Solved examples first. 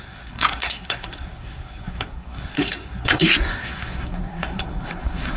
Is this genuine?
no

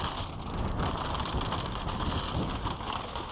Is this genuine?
yes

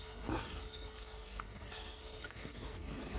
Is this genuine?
no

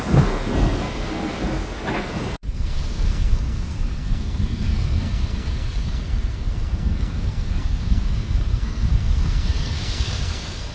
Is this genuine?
no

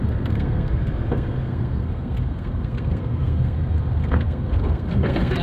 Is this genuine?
no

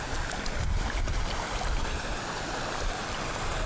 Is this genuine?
yes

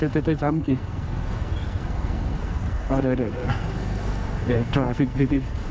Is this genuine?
no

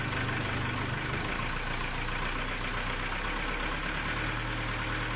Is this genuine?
yes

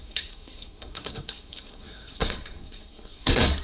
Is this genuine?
no